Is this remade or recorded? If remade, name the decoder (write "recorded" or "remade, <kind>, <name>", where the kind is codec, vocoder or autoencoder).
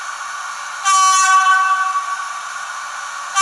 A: recorded